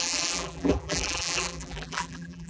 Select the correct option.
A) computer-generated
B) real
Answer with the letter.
A